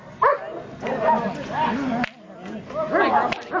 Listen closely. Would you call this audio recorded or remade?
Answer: recorded